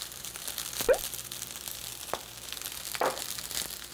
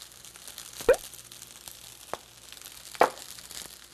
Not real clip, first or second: first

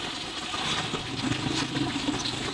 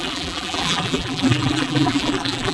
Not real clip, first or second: second